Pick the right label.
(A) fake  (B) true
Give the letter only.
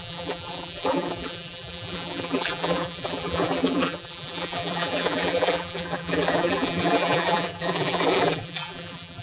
A